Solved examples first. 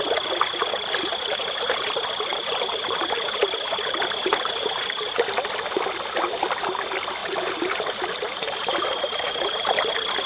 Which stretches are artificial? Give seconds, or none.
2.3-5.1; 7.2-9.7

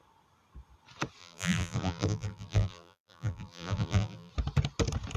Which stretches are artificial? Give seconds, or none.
1.2-4.3

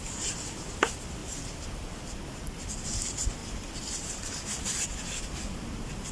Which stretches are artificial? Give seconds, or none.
3.4-5.2

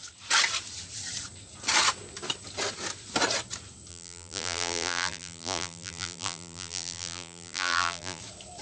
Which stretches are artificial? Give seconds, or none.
3.9-8.2